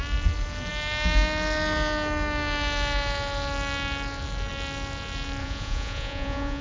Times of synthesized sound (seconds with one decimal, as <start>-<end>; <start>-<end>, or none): 5.4-6.6